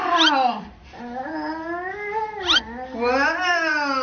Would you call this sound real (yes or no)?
yes